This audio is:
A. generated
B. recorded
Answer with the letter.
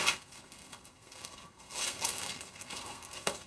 A